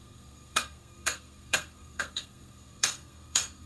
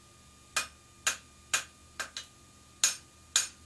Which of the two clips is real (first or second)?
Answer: second